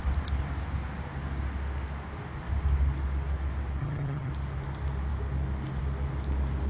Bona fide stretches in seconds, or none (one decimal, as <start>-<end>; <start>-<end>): 0.0-3.8; 4.3-6.7